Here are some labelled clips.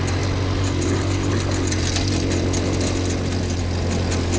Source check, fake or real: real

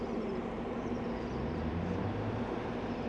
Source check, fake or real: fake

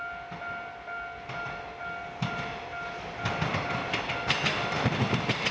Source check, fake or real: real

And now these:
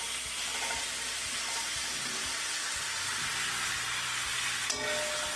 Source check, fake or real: real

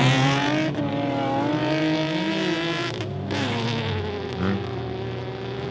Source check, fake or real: real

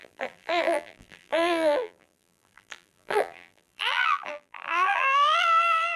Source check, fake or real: fake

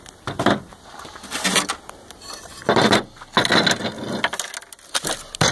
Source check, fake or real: real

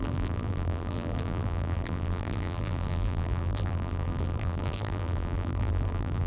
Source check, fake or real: fake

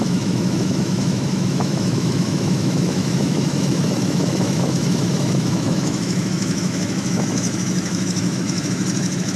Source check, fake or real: fake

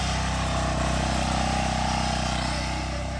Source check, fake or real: real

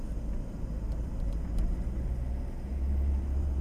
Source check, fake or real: fake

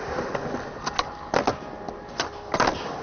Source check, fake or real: real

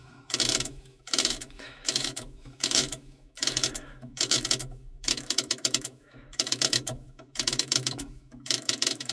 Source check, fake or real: fake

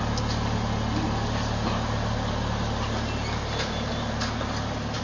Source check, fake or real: real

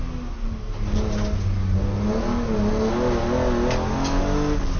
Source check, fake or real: real